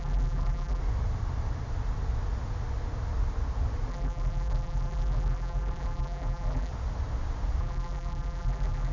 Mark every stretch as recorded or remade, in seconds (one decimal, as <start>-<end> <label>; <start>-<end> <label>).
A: 0.0-0.8 remade; 0.8-3.9 recorded; 3.9-6.7 remade; 6.7-7.6 recorded; 7.6-8.9 remade